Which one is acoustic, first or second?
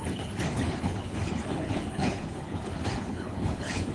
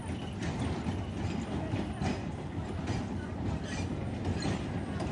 second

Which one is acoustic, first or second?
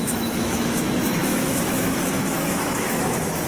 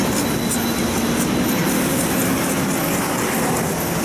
second